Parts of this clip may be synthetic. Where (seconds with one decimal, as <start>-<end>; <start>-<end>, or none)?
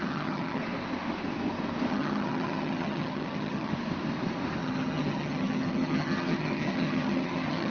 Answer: 0.0-0.6; 1.9-3.7; 4.6-7.7